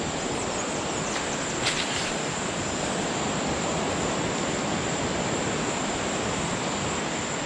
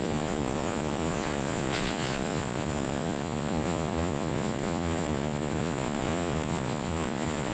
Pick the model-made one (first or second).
second